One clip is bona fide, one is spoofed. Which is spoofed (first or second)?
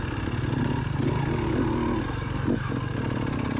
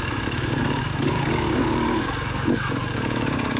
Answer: second